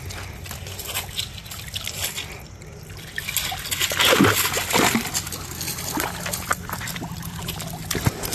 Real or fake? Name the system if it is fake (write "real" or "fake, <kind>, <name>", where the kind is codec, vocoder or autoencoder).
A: real